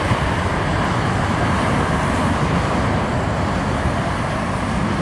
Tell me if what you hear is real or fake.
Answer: real